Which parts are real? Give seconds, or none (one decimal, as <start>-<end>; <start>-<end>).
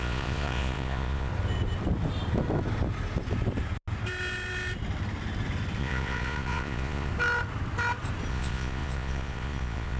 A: 1.3-5.8; 7.1-8.3